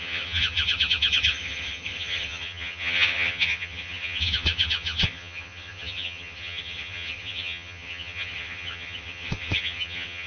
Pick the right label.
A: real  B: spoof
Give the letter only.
B